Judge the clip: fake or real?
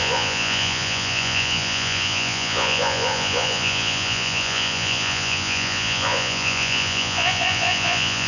fake